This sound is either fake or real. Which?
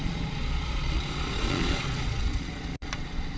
fake